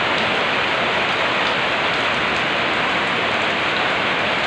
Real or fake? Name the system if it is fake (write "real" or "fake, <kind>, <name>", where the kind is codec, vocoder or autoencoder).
real